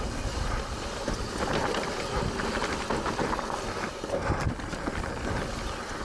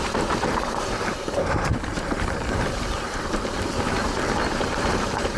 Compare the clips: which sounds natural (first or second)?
first